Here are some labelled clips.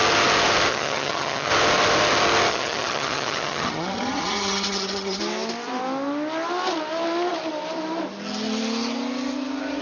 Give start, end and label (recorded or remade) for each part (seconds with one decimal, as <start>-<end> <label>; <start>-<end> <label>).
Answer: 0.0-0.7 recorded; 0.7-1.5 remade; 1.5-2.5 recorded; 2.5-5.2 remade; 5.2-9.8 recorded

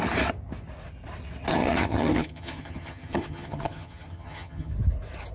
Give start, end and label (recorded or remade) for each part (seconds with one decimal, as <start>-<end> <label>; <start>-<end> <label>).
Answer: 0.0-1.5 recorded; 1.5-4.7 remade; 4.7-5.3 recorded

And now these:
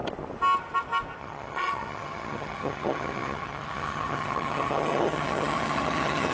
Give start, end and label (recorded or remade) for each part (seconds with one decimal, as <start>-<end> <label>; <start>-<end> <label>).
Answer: 0.0-1.2 recorded; 1.2-6.3 remade

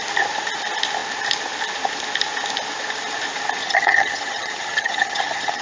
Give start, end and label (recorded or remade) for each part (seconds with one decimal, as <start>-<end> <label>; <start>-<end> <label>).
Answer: 0.0-3.6 recorded; 3.6-5.6 remade

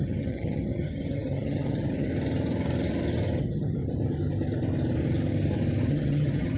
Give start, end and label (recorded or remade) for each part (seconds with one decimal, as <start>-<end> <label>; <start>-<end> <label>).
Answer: 0.0-2.1 remade; 2.1-3.4 recorded; 3.4-3.8 remade; 3.8-5.9 recorded; 5.9-6.6 remade